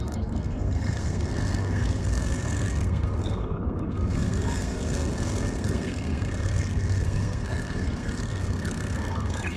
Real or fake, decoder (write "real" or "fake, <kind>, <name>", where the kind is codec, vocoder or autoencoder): fake, codec, SNAC